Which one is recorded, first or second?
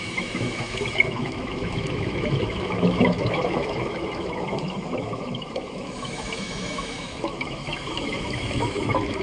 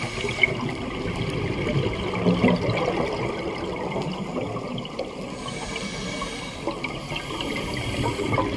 second